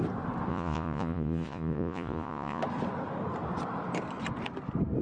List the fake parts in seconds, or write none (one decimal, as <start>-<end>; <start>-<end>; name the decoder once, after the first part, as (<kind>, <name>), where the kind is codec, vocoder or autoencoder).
0.5-2.6 (vocoder, Vocos)